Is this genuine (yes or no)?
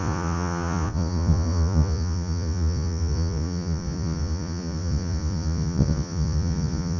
no